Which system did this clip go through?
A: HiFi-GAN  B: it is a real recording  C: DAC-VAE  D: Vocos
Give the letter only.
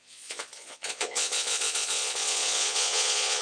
D